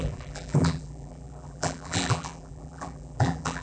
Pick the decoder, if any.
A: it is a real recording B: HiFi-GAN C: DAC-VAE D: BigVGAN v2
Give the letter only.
D